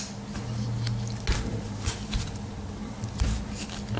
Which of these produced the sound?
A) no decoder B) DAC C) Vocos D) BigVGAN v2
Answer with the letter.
A